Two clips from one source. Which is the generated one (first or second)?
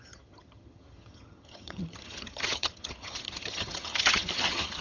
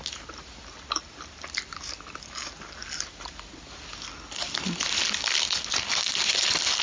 first